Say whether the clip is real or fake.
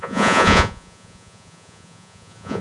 fake